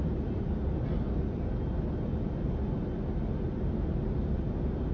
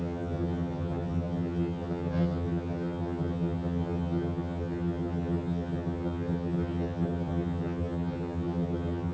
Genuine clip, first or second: first